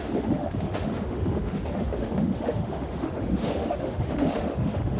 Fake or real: fake